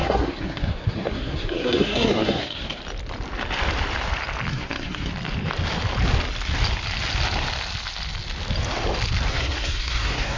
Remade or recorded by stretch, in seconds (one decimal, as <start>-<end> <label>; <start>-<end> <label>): 0.0-2.8 remade; 2.8-4.5 recorded; 4.5-5.1 remade; 5.1-9.3 recorded; 9.3-10.4 remade